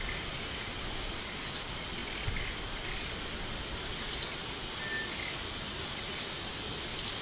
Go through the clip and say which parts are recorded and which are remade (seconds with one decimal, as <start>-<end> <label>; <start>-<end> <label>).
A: 0.0-7.2 recorded